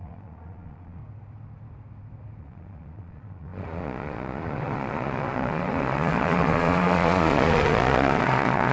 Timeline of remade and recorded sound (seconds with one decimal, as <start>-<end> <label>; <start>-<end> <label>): 0.0-1.0 remade; 1.0-2.4 recorded; 2.4-8.7 remade